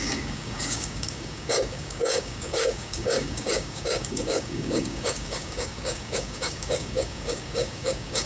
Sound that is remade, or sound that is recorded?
remade